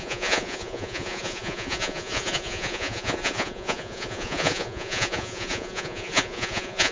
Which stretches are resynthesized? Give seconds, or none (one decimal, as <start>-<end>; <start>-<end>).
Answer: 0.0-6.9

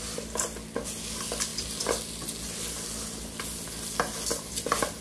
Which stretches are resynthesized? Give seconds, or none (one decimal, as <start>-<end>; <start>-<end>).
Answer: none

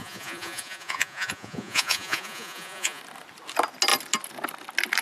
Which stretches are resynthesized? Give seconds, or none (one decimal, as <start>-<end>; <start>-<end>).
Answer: 0.0-3.0